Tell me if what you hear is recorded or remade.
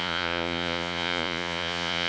remade